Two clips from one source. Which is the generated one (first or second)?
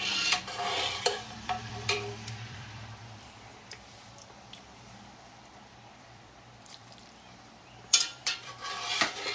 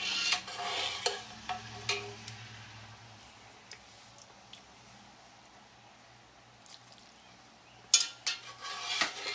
first